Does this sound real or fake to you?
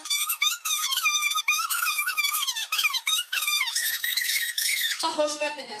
fake